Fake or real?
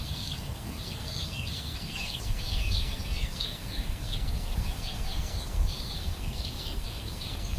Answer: fake